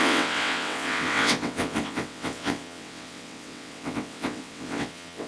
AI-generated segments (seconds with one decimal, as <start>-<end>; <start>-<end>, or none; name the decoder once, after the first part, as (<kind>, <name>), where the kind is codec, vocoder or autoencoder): 0.0-5.3 (vocoder, WaveNeXt)